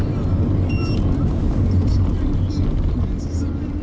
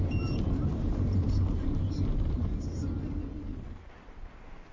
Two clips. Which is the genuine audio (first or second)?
first